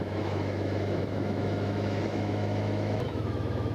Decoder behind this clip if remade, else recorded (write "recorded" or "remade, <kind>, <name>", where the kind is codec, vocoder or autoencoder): remade, autoencoder, DAC-VAE